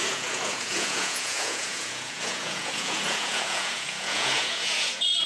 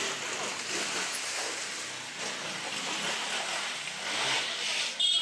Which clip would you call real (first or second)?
second